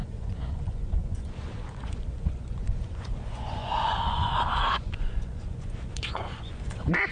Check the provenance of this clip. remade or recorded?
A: remade